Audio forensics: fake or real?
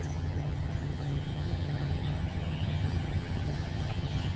fake